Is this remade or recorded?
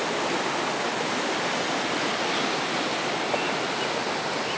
recorded